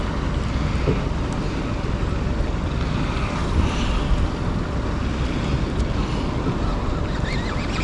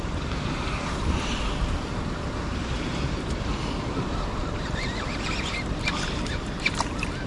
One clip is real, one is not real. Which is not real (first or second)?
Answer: second